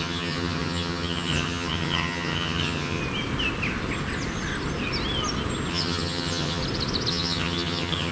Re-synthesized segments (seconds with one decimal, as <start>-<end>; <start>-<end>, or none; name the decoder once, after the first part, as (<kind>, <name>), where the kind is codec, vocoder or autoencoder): 0.0-3.0 (vocoder, HiFi-GAN); 5.7-6.6; 7.1-8.1